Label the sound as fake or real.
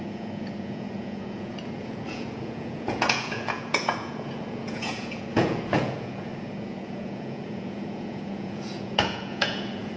fake